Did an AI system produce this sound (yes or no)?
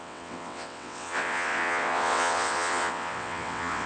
yes